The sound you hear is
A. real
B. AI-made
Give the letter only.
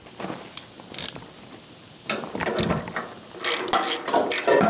A